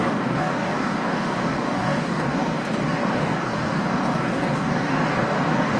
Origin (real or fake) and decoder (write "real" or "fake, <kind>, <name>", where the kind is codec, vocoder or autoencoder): fake, codec, DAC